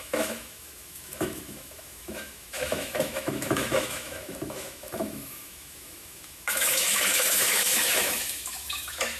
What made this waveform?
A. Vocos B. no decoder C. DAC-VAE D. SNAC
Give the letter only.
C